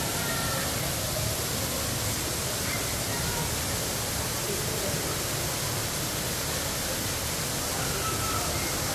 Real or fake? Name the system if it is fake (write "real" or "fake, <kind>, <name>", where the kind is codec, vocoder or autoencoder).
real